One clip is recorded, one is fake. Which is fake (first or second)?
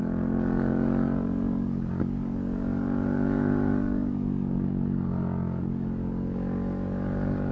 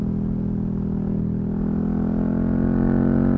first